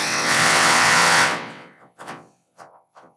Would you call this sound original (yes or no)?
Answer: no